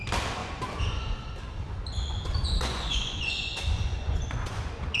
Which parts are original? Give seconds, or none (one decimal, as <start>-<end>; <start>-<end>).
0.0-0.4; 1.3-1.9